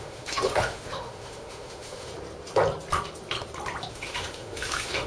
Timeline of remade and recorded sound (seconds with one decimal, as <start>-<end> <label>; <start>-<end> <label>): 0.0-2.1 remade; 2.1-3.9 recorded; 3.9-5.1 remade